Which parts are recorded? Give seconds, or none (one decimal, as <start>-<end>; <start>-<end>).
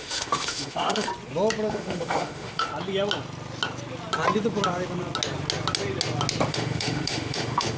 1.1-1.7; 2.7-6.5